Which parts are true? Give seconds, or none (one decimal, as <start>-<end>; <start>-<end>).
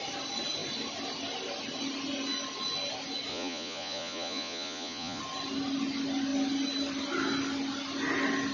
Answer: 0.0-3.3; 5.2-8.5